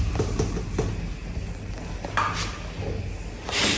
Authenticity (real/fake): real